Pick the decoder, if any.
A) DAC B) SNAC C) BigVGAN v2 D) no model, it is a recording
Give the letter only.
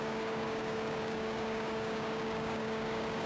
A